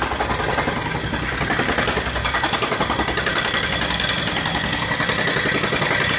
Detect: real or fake real